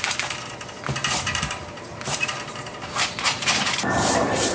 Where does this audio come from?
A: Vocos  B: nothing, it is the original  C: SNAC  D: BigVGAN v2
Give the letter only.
D